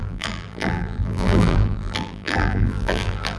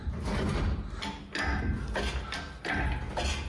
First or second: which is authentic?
second